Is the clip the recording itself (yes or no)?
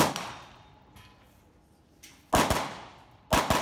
yes